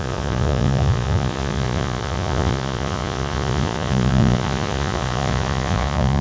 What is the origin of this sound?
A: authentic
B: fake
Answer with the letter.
B